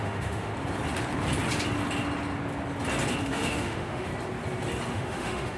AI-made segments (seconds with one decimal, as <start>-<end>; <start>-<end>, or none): 0.0-0.5; 3.2-4.1; 4.9-5.6

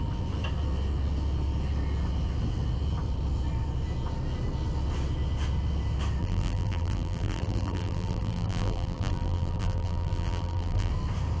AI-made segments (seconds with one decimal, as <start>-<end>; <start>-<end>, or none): 6.2-10.9

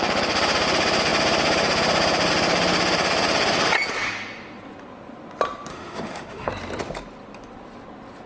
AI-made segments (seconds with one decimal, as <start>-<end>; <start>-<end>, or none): 5.7-6.5

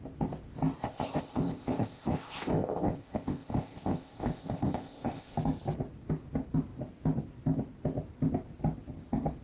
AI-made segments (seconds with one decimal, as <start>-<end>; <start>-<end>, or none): 0.8-5.4

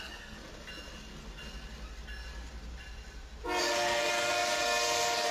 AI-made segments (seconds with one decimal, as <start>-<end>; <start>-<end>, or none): 0.0-0.4; 3.6-5.3

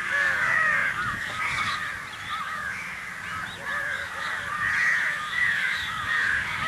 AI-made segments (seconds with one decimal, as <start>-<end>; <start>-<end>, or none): 0.0-1.8; 2.4-3.1; 3.8-4.3; 5.3-6.7

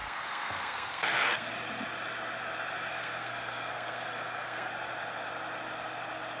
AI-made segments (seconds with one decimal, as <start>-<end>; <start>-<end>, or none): 0.0-1.5; 2.9-4.7

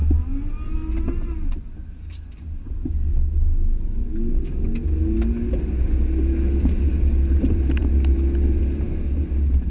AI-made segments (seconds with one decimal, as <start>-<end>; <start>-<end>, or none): none